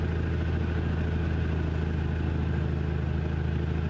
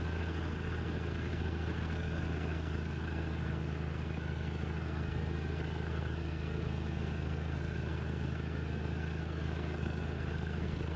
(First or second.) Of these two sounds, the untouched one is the first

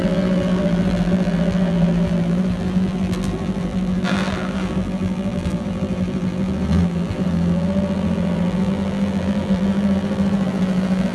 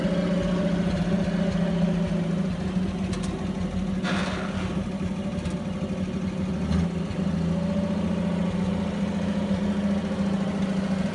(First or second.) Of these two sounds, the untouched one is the second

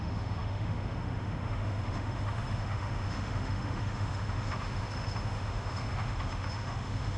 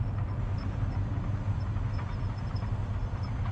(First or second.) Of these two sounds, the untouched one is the second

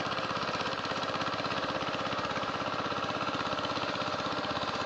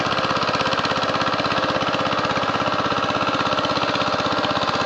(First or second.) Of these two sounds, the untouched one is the second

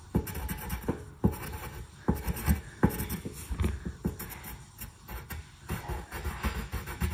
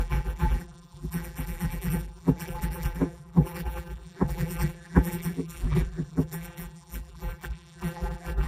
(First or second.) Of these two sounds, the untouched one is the first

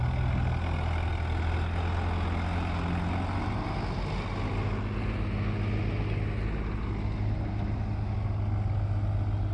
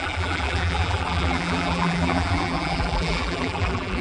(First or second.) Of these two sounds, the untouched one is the first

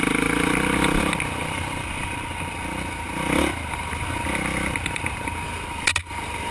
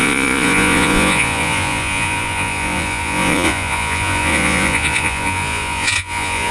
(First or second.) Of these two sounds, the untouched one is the first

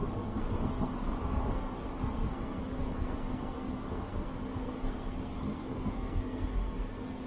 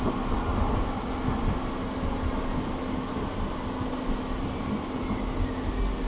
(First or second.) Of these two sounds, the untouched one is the second